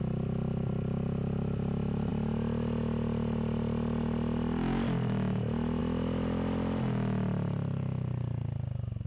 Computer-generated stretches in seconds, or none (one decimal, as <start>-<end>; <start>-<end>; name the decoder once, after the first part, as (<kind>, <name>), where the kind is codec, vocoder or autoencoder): none